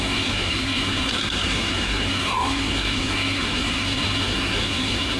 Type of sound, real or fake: fake